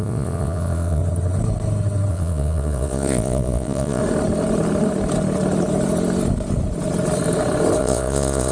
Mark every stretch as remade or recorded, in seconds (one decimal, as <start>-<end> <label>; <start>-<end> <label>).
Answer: 0.0-1.0 remade; 1.0-2.1 recorded; 2.1-4.0 remade; 4.0-7.8 recorded; 7.8-8.5 remade